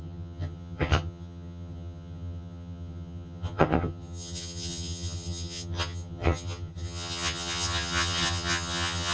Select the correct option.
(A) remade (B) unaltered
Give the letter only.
A